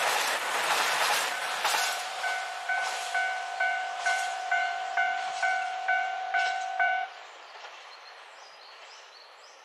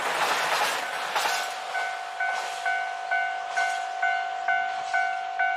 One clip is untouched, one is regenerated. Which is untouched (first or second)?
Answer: second